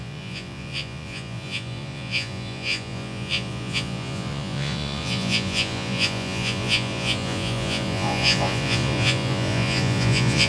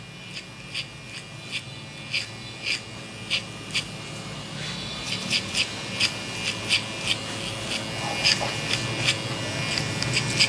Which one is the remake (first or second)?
first